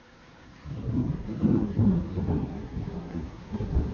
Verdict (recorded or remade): remade